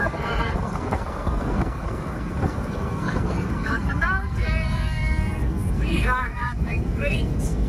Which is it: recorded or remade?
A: remade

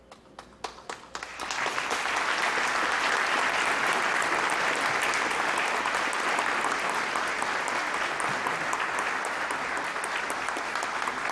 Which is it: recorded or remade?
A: recorded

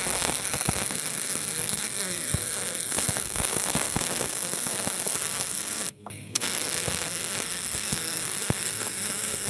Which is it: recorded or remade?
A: remade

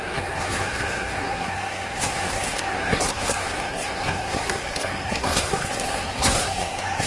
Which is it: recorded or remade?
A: remade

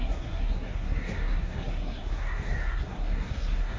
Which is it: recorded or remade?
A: remade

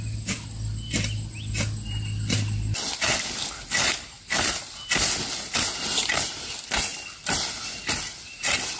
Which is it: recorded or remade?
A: recorded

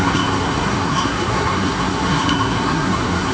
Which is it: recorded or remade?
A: remade